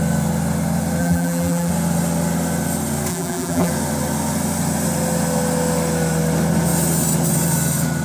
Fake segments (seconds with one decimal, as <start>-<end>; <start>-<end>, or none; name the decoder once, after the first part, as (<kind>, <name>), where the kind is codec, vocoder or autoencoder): 1.0-1.7 (vocoder, BigVGAN v2); 3.1-3.7